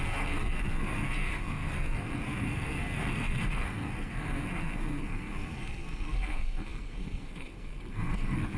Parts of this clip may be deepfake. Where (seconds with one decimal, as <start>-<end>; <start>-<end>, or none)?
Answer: 0.0-8.6